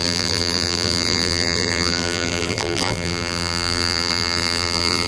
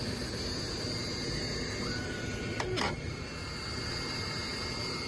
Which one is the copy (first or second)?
first